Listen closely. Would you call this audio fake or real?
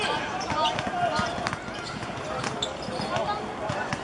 real